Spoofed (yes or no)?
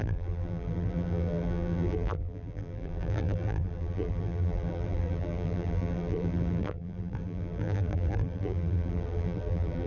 yes